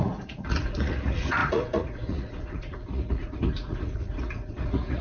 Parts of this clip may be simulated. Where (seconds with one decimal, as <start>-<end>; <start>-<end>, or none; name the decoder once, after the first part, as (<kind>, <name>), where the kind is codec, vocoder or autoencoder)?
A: 0.0-5.0 (vocoder, Vocos)